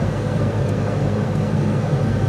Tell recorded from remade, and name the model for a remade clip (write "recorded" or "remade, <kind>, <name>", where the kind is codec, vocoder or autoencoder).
remade, codec, SNAC